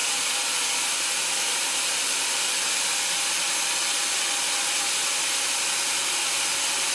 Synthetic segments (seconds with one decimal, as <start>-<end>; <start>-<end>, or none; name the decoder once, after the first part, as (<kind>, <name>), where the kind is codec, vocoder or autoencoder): 0.0-4.0 (vocoder, BigVGAN v2)